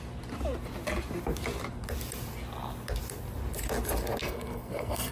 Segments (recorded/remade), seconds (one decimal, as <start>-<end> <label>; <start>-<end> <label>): 0.0-4.2 recorded; 4.2-5.1 remade